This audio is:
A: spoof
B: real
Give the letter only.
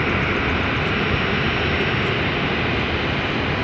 B